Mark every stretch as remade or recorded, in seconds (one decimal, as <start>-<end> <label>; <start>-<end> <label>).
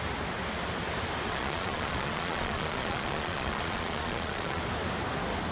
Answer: 0.0-1.3 recorded; 1.3-4.6 remade; 4.6-5.5 recorded